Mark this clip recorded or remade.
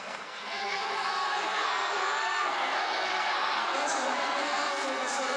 remade